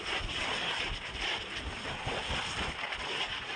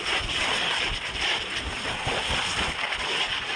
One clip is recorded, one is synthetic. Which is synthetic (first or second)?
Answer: second